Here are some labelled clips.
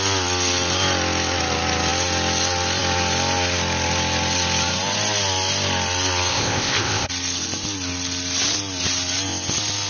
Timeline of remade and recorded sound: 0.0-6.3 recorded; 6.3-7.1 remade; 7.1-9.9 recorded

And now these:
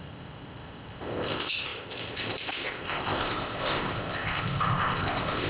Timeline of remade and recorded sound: 0.0-5.5 remade

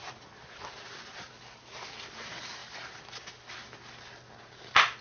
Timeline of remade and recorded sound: 0.0-5.0 recorded

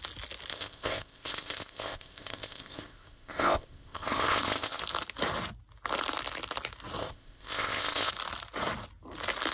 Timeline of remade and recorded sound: 0.0-0.5 recorded; 0.5-4.8 remade; 4.8-7.0 recorded; 7.0-8.1 remade; 8.1-9.5 recorded